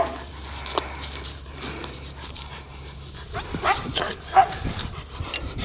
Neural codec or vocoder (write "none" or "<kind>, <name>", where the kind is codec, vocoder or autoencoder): vocoder, BigVGAN v2